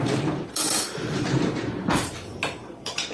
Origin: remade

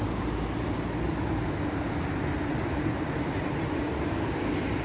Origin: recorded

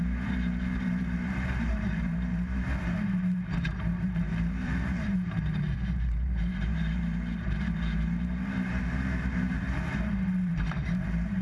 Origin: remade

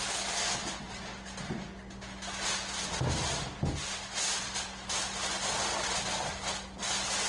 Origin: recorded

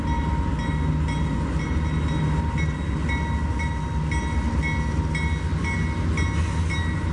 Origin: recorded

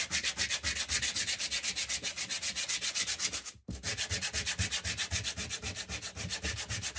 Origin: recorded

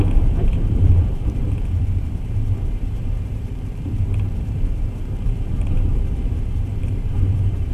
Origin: remade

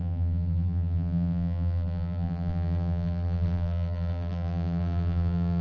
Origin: remade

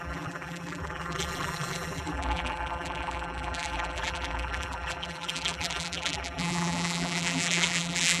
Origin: remade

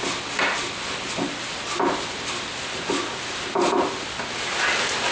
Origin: recorded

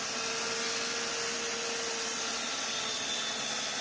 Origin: recorded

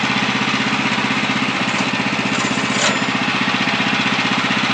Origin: recorded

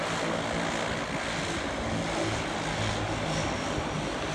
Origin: recorded